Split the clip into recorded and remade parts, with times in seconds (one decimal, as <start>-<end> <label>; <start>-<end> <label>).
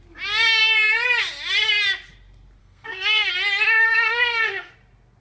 0.0-2.6 recorded; 2.6-3.3 remade; 3.3-3.9 recorded; 3.9-4.7 remade; 4.7-5.2 recorded